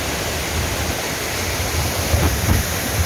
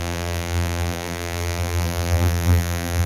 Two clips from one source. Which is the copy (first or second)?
second